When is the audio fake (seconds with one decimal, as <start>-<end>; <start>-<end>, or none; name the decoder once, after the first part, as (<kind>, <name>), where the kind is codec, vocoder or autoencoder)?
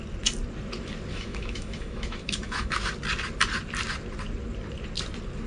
1.1-2.7 (autoencoder, DAC-VAE)